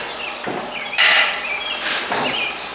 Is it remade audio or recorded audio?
remade